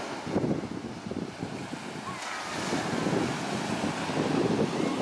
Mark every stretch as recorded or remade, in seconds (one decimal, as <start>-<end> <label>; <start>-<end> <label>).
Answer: 0.0-5.0 recorded